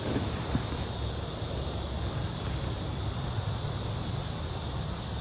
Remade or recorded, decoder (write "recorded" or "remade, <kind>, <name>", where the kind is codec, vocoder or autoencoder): recorded